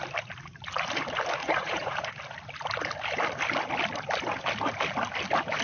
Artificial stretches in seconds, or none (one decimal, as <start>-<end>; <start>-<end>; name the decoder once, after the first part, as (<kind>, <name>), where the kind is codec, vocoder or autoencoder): 1.4-2.1 (vocoder, Vocos)

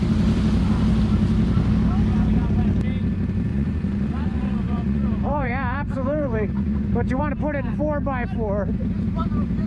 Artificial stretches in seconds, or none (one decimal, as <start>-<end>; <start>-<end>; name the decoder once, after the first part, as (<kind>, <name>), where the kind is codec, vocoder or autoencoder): 3.5-7.2 (vocoder, Vocos)

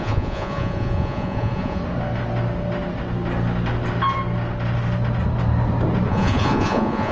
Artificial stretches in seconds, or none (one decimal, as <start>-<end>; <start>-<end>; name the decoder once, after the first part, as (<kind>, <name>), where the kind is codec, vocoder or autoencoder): 0.0-1.8 (vocoder, Vocos); 6.1-7.1

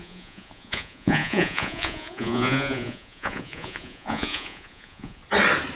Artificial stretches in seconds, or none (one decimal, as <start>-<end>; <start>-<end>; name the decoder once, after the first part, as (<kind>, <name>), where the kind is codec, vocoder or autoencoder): 0.0-5.2 (vocoder, Vocos)

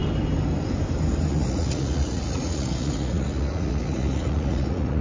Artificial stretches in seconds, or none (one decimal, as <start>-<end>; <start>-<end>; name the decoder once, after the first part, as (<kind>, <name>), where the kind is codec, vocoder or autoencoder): 1.3-5.0 (vocoder, Vocos)